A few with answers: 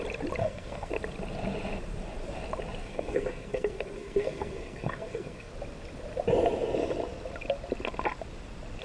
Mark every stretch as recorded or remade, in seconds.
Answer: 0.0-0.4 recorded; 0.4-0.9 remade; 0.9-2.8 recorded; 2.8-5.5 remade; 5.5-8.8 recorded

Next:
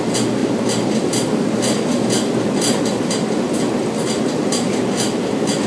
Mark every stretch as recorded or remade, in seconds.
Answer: 0.0-5.7 recorded

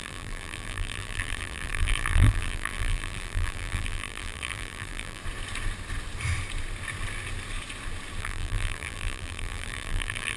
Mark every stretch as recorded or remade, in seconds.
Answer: 0.0-5.2 remade; 5.2-8.2 recorded; 8.2-10.4 remade